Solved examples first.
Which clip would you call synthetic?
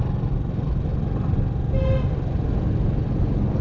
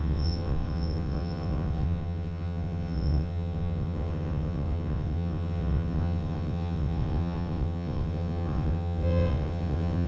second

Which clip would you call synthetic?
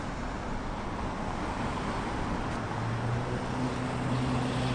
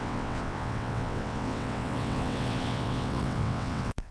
second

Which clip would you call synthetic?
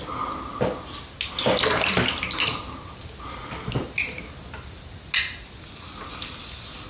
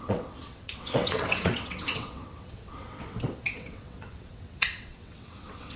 second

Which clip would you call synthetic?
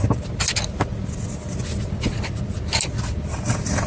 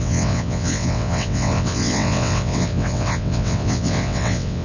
second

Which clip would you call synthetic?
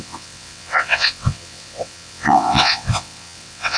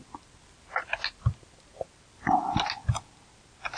first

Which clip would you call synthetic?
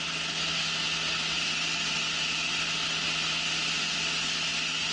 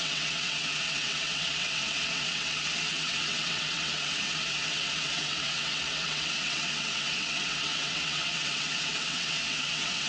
second